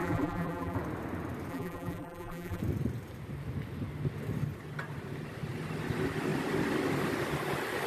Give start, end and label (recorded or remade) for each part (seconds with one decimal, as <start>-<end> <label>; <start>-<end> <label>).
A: 0.0-0.8 remade; 0.8-1.5 recorded; 1.5-2.6 remade; 2.6-7.9 recorded